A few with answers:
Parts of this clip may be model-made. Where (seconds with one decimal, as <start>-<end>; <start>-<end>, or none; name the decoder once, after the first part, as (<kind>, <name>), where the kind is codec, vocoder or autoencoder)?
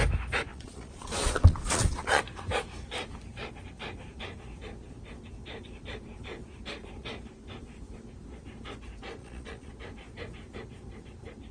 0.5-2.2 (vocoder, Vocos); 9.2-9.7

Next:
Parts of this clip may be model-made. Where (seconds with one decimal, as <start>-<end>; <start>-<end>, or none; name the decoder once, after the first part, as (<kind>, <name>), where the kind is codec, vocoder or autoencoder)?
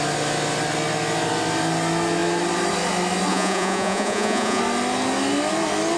3.3-4.6 (vocoder, Vocos)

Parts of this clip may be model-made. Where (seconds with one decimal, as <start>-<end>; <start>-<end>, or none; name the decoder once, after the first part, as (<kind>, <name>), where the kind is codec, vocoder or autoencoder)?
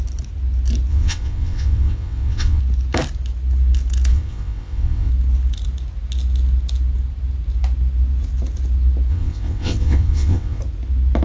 0.9-2.6 (vocoder, WaveNeXt); 4.1-5.1; 9.1-10.6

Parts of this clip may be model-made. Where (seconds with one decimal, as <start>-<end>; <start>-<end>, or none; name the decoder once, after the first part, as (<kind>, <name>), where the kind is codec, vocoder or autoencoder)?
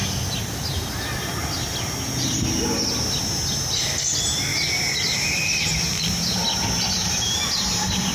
none